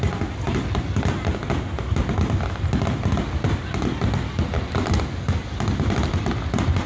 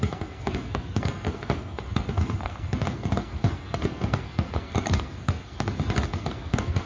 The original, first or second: first